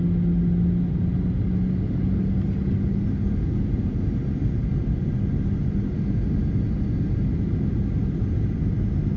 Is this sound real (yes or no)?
yes